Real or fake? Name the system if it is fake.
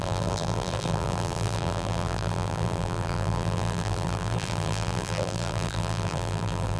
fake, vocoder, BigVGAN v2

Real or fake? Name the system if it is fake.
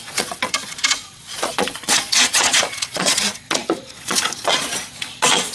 fake, vocoder, Vocos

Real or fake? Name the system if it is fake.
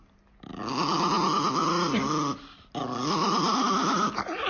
real